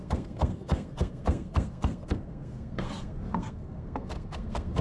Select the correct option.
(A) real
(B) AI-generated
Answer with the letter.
B